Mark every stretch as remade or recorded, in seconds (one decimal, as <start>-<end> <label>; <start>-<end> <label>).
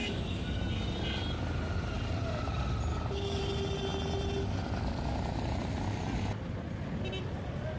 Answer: 0.0-0.6 remade; 0.6-2.9 recorded; 2.9-3.4 remade; 3.4-7.8 recorded